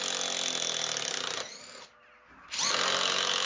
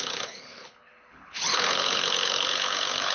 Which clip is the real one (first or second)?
first